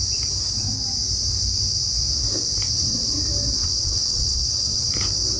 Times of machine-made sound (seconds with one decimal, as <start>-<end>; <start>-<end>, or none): 2.7-3.2; 3.6-4.9